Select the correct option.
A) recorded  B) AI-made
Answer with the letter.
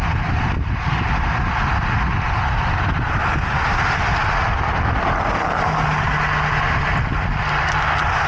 A